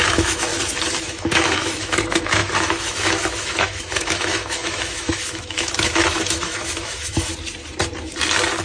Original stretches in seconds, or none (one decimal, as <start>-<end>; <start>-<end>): 0.5-1.0; 7.3-8.6